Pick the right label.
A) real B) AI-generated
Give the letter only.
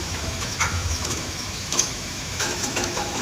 B